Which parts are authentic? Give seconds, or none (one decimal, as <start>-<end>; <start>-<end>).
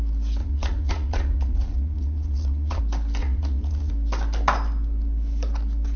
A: 0.0-0.4; 2.8-3.2; 3.9-6.0